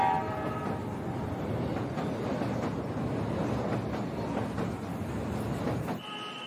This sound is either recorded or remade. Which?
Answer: recorded